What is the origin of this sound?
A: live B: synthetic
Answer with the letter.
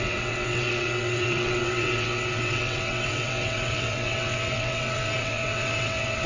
B